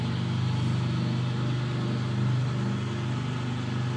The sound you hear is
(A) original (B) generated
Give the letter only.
A